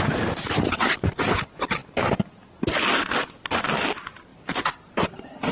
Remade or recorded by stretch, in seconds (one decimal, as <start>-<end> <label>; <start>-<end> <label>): 0.0-5.5 recorded